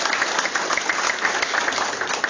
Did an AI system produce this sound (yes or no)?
no